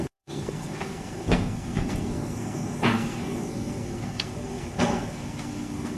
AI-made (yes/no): yes